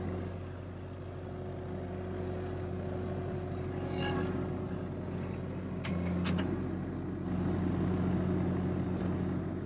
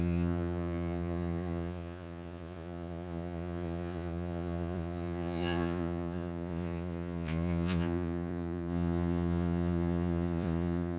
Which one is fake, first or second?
second